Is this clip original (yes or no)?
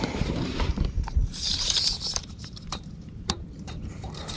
no